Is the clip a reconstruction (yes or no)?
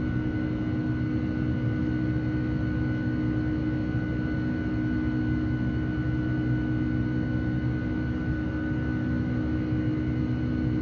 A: no